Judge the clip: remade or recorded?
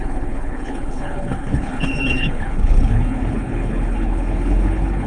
remade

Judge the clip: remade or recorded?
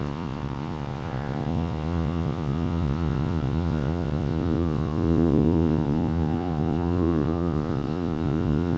remade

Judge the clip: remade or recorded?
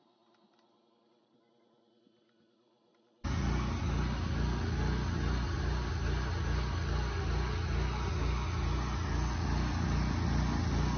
recorded